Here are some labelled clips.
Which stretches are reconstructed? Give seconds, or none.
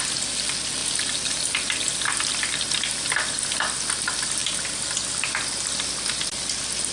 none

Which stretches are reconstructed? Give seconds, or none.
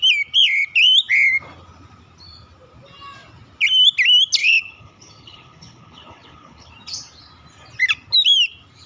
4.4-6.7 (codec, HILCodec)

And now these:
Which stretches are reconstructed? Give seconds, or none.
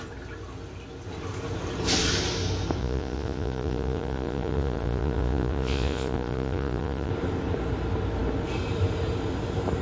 2.8-7.1 (vocoder, Vocos)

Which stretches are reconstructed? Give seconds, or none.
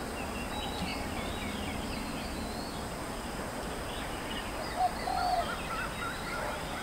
none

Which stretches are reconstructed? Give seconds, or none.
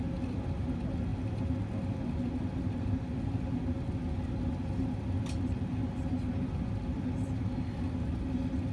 none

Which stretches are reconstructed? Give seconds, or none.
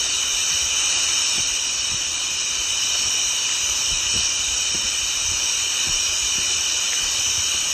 none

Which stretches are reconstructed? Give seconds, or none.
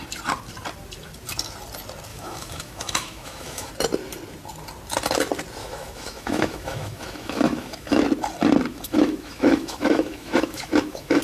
2.1-3.7 (autoencoder, DAC-VAE); 5.6-8.0; 8.7-11.2